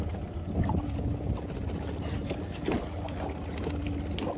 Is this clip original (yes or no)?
yes